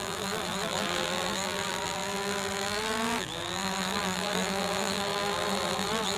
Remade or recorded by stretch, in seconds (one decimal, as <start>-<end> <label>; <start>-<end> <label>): 0.0-6.2 remade

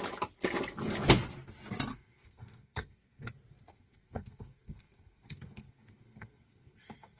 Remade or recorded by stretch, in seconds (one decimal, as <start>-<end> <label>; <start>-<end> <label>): 0.0-1.9 recorded; 1.9-3.3 remade; 3.3-3.7 recorded; 3.7-7.2 remade

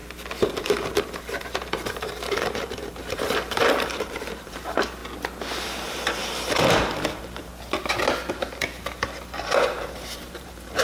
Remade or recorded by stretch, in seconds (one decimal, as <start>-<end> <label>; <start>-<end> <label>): 0.0-0.5 recorded; 0.5-5.0 remade; 5.0-5.6 recorded; 5.6-7.5 remade; 7.5-8.3 recorded; 8.3-10.8 remade

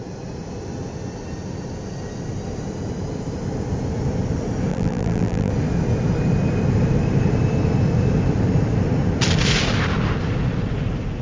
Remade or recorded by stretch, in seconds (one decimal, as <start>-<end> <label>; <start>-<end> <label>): 0.0-4.7 recorded; 4.7-5.5 remade; 5.5-11.2 recorded

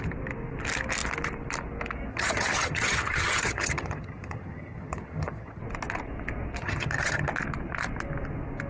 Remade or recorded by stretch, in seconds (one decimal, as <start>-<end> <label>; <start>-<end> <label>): 0.0-2.1 recorded; 2.1-5.6 remade; 5.6-6.6 recorded; 6.6-7.3 remade; 7.3-8.7 recorded